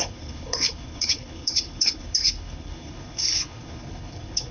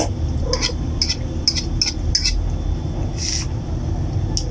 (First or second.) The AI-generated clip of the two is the first